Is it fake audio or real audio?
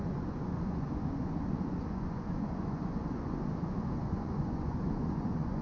fake